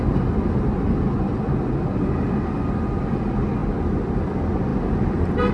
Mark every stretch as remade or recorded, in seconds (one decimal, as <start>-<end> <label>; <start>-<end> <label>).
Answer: 0.0-5.5 recorded